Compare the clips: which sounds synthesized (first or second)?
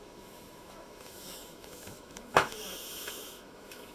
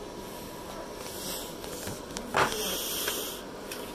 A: first